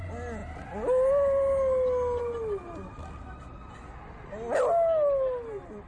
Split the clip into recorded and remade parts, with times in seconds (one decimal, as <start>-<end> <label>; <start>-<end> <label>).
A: 0.0-5.9 recorded